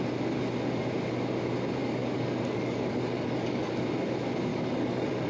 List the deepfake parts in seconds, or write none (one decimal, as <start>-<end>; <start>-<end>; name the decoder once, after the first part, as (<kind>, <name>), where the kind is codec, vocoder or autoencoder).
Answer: 1.8-3.7 (codec, DAC); 4.5-5.3